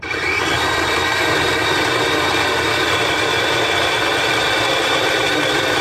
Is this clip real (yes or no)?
yes